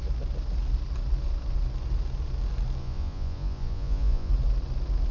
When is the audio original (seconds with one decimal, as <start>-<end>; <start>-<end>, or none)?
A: 0.0-2.8; 4.3-5.1

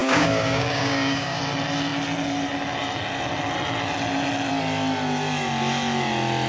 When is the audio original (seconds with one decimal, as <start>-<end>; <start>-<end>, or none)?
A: 1.4-6.5

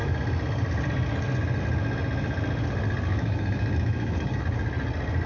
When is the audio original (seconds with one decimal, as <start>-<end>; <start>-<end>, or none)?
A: 0.0-3.1; 4.4-5.3

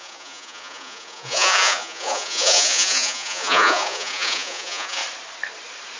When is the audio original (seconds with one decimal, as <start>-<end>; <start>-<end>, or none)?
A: 5.0-6.0

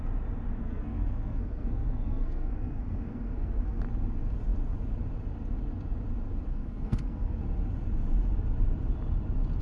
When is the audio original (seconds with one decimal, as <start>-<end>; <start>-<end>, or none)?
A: 0.0-0.6; 3.8-6.5; 7.4-9.6

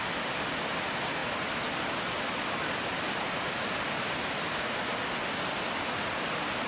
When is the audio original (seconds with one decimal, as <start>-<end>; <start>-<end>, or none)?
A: 0.0-6.7

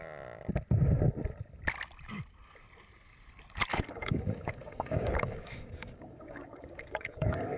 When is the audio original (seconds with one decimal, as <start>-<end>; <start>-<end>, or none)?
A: 0.0-3.7

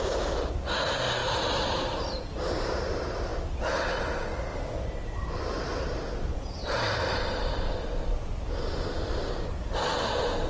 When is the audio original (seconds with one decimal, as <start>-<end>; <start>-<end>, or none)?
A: 0.0-1.2; 2.0-4.5; 6.1-6.6; 9.3-10.5